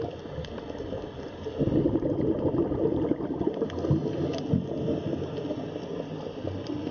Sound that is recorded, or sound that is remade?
recorded